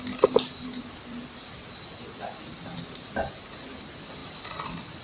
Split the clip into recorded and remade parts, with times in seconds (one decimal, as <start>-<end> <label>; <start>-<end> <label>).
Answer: 0.0-5.0 recorded